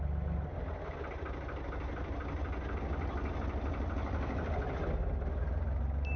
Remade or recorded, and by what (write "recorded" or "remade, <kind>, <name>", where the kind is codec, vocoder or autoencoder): recorded